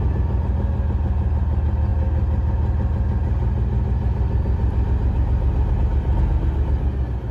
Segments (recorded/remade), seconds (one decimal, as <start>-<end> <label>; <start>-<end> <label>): 0.0-7.3 recorded